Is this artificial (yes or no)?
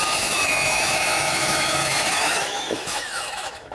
yes